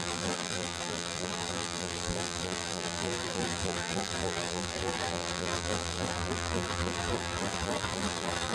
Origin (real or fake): fake